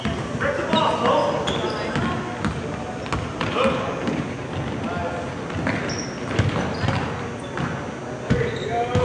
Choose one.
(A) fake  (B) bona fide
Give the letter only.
B